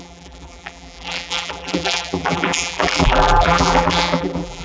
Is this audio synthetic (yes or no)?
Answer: yes